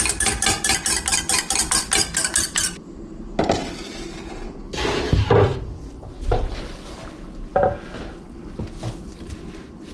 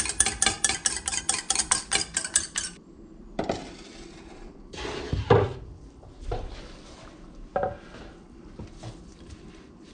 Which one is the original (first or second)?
first